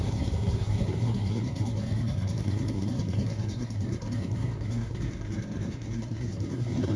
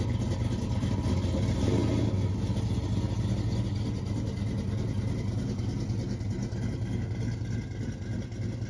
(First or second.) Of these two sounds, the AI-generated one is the first